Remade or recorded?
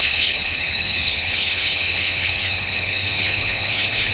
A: remade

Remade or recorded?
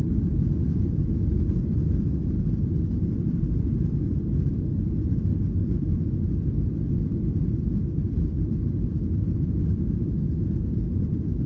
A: recorded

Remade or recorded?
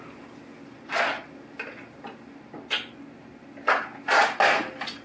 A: recorded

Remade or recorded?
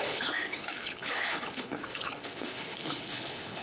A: remade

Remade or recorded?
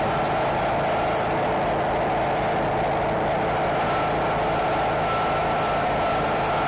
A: recorded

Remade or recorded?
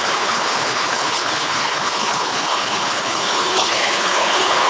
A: remade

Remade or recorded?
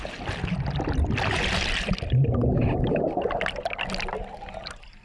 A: recorded